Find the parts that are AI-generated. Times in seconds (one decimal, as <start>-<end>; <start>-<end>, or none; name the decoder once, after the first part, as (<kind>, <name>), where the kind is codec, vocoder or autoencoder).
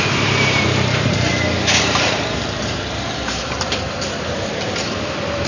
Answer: 0.0-1.3 (vocoder, BigVGAN v2); 1.8-5.5